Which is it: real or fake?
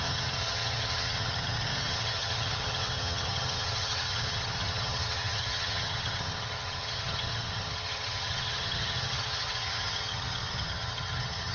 fake